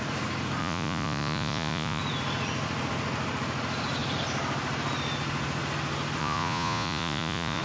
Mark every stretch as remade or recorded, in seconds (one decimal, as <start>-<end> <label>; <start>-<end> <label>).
0.0-0.6 recorded; 0.6-2.0 remade; 2.0-6.2 recorded; 6.2-7.6 remade